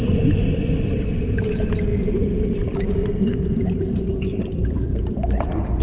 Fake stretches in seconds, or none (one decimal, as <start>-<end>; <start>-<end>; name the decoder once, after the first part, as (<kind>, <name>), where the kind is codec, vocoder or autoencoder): 1.9-5.8 (vocoder, BigVGAN v2)